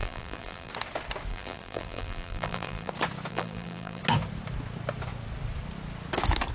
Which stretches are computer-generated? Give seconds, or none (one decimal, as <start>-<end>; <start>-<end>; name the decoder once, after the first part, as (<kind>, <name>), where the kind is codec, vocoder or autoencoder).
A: 0.0-0.7 (vocoder, BigVGAN v2); 1.3-2.9; 3.3-4.0